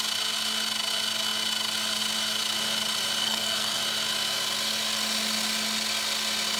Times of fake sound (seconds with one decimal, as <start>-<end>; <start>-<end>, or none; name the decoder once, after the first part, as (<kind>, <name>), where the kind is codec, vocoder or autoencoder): 3.2-3.8 (codec, SNAC)